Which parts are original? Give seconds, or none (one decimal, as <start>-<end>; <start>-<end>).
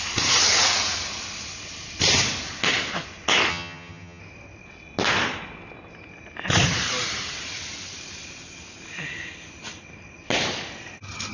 0.0-3.5; 4.2-11.3